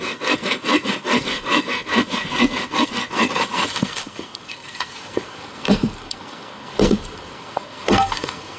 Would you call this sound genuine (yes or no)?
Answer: no